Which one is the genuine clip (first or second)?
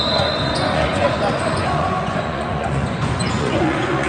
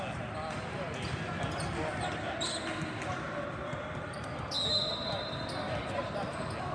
second